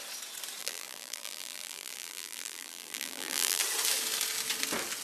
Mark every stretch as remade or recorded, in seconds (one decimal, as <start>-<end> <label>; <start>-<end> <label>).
0.0-0.6 recorded; 0.6-3.6 remade; 3.6-5.0 recorded